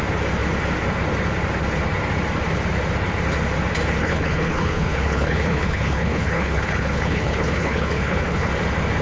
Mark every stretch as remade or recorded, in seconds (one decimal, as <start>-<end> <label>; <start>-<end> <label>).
0.0-4.0 recorded; 4.0-8.5 remade; 8.5-9.0 recorded